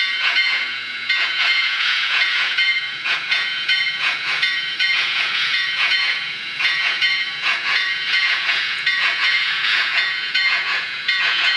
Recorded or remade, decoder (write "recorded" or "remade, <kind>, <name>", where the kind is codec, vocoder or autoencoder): remade, vocoder, Vocos